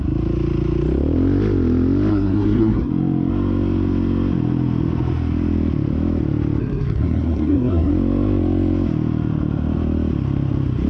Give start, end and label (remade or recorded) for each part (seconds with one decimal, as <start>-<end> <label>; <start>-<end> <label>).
0.0-2.1 recorded; 2.1-2.9 remade; 2.9-6.6 recorded; 6.6-7.9 remade; 7.9-10.9 recorded